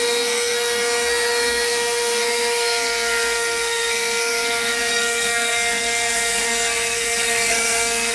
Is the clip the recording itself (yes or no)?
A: no